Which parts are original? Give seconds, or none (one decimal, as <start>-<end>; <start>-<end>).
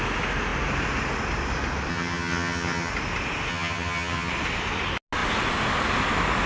0.0-1.9; 2.9-3.5; 4.3-6.5